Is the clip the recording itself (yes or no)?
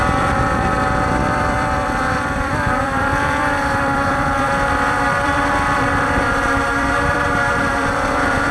no